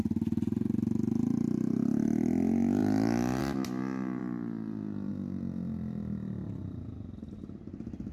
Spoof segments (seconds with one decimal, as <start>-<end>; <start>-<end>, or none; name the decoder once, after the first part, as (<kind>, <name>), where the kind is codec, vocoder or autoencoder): 4.2-5.1 (vocoder, BigVGAN v2)